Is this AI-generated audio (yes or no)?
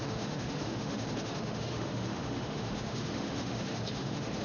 yes